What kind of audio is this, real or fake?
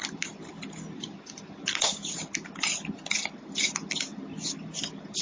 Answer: real